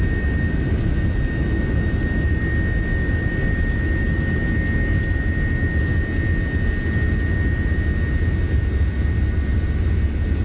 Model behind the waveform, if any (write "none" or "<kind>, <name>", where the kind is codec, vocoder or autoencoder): none